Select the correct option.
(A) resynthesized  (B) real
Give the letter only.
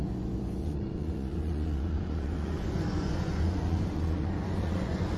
A